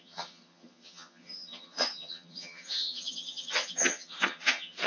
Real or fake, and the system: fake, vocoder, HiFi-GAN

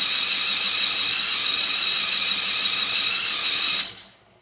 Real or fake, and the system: real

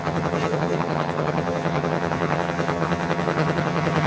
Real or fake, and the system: fake, vocoder, HiFi-GAN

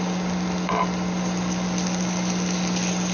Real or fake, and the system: real